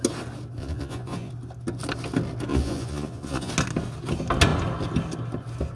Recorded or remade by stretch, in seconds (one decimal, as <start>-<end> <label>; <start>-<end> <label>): 0.0-0.6 recorded; 0.6-1.3 remade; 1.3-2.5 recorded; 2.5-3.5 remade; 3.5-5.8 recorded